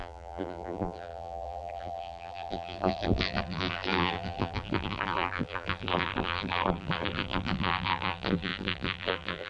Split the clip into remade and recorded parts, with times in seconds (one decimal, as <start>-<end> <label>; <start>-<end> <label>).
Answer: 0.0-9.5 remade